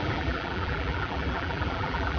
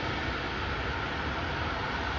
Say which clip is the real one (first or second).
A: second